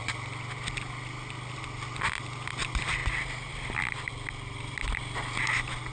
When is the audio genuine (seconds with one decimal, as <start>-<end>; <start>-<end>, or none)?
0.0-5.9